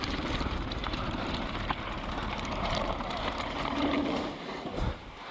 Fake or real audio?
fake